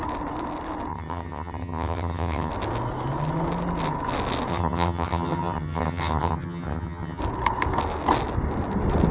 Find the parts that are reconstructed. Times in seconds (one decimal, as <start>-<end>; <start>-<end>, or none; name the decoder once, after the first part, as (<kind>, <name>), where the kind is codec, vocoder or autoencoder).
0.9-2.5 (vocoder, HiFi-GAN); 4.5-7.2